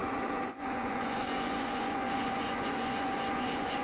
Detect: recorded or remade remade